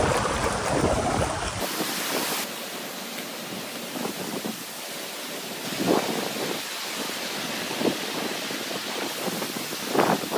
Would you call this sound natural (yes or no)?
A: yes